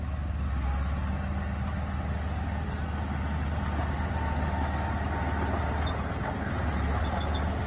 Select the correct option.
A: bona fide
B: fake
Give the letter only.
A